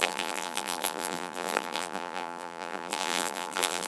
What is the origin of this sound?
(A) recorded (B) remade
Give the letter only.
B